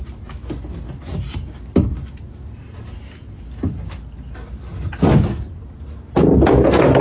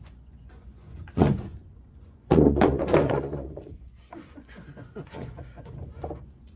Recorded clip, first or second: first